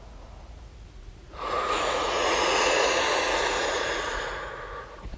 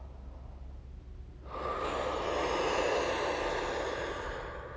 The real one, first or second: second